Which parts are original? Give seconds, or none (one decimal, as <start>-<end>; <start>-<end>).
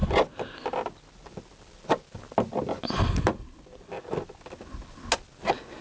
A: 0.0-5.8